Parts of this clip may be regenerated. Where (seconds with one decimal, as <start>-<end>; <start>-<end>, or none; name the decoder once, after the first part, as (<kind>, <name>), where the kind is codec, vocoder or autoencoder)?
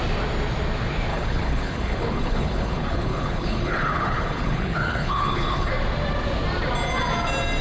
1.1-5.7 (codec, HILCodec)